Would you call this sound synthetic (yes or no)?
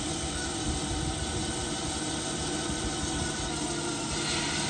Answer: no